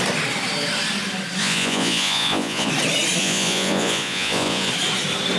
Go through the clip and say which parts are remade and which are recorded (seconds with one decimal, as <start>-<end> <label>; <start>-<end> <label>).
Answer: 0.0-1.4 recorded; 1.4-2.7 remade; 2.7-3.2 recorded; 3.2-4.7 remade; 4.7-5.4 recorded